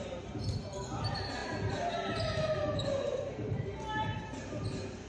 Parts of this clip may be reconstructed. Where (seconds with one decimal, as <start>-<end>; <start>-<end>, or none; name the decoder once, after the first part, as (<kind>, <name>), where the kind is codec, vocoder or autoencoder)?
none